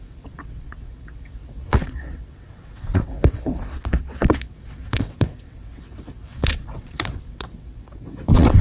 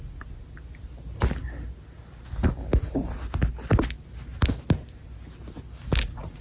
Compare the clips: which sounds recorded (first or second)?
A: second